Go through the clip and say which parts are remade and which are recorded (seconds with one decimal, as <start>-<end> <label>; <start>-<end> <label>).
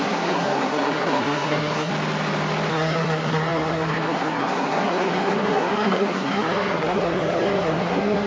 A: 0.0-1.9 remade; 1.9-2.7 recorded; 2.7-8.3 remade